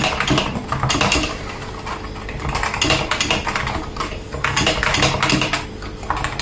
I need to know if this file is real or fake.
real